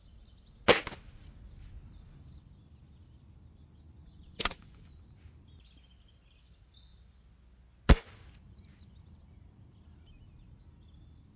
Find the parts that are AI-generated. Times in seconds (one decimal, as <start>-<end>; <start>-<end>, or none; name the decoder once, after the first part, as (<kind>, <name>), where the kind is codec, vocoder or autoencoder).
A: 4.0-5.0 (vocoder, Vocos)